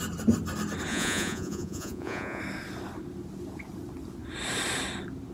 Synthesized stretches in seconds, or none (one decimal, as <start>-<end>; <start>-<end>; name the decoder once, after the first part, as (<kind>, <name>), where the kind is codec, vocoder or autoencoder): 0.9-2.4 (vocoder, Vocos)